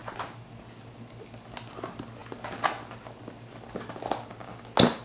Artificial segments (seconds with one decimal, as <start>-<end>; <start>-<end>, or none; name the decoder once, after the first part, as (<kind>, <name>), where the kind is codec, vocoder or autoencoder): none